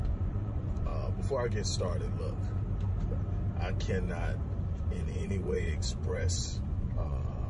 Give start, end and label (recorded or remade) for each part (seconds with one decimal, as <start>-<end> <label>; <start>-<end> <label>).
0.0-0.9 remade; 0.9-4.7 recorded; 4.7-7.5 remade